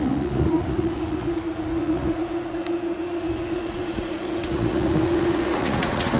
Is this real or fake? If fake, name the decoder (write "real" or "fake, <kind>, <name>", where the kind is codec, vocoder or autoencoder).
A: fake, vocoder, Vocos